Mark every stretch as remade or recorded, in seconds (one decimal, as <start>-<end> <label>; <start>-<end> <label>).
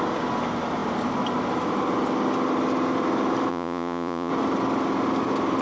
0.0-3.5 recorded; 3.5-4.3 remade; 4.3-5.6 recorded